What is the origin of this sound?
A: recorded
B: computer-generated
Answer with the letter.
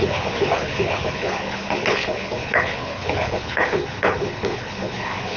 B